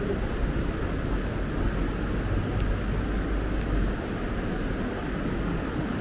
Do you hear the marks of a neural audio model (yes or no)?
no